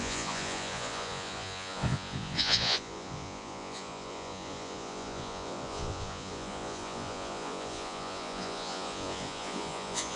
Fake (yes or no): yes